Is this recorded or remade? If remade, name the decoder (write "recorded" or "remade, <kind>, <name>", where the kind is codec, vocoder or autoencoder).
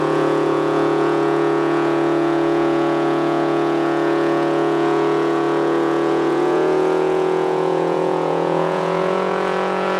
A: remade, vocoder, Vocos